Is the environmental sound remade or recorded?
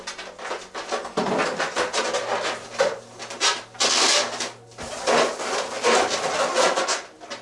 recorded